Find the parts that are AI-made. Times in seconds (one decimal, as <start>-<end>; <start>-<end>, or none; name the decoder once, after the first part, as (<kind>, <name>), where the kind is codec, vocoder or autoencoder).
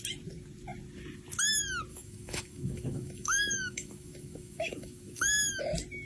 1.9-5.6 (autoencoder, DAC-VAE)